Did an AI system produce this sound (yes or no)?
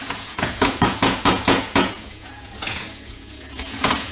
yes